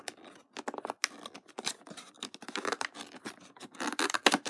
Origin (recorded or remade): recorded